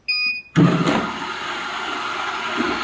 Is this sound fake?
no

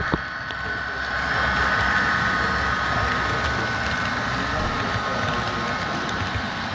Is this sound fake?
no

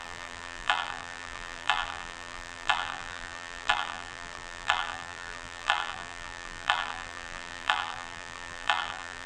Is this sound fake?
yes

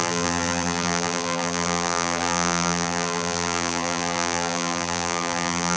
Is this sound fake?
yes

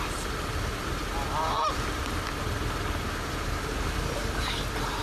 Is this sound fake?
yes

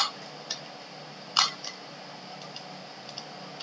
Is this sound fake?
no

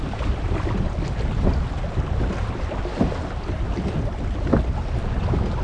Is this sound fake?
no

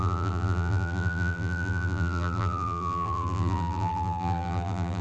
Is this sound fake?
yes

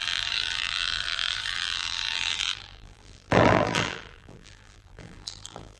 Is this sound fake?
yes